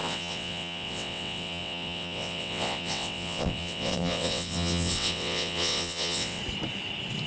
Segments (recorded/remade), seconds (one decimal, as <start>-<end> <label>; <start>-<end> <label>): 0.0-6.4 remade; 6.4-7.3 recorded